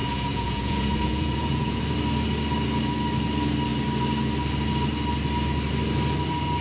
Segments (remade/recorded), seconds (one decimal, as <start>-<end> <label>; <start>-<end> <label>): 0.0-1.8 remade; 1.8-6.6 recorded